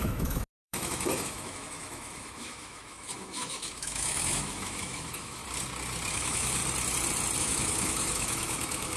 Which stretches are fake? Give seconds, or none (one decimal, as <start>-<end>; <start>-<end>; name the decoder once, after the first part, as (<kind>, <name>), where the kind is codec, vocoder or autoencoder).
0.0-5.4 (autoencoder, DAC-VAE); 6.1-6.6; 7.4-9.0